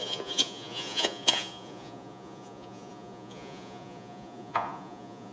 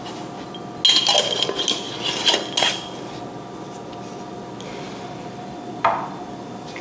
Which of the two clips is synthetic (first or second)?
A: first